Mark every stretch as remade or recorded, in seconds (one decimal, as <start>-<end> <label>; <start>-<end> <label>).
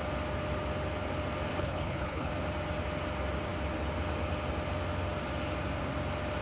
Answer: 0.0-1.5 recorded; 1.5-2.3 remade; 2.3-6.4 recorded